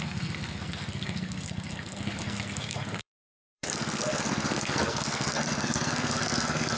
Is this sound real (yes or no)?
no